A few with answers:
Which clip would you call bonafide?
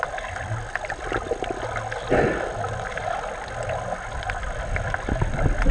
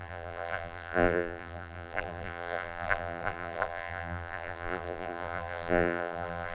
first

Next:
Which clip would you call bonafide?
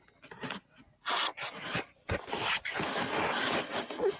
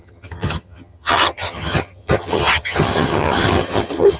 first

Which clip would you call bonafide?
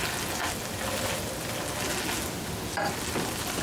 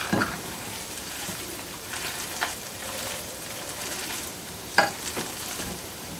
first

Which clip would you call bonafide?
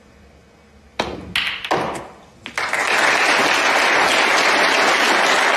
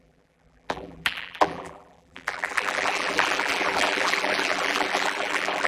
first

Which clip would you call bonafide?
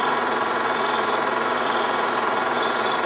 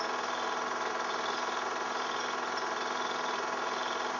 second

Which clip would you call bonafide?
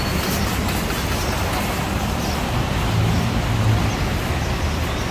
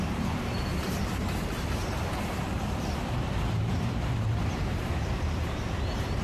first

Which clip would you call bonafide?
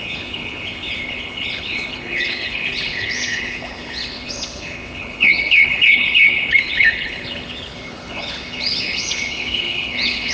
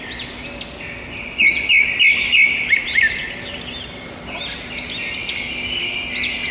second